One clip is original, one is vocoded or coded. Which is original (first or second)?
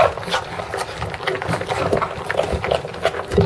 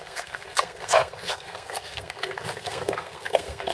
first